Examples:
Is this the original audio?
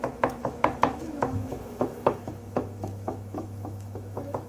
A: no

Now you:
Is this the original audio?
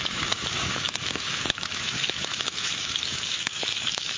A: no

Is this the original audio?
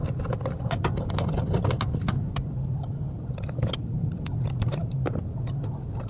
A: yes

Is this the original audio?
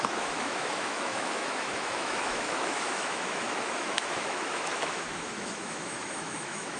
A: no